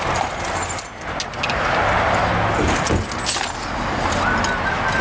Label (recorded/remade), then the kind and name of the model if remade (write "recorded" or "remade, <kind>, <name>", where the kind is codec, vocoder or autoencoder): recorded